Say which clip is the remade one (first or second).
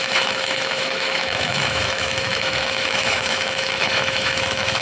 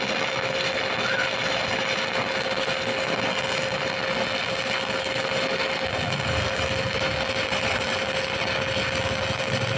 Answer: first